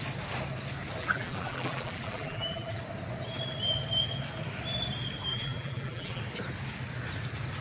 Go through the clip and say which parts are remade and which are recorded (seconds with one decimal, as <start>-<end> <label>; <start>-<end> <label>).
0.0-1.0 recorded; 1.0-2.8 remade; 2.8-5.3 recorded; 5.3-6.2 remade; 6.2-7.6 recorded